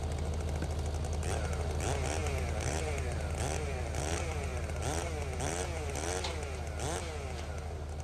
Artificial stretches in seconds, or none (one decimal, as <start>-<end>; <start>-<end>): none